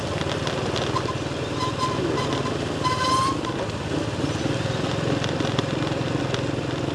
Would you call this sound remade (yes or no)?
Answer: no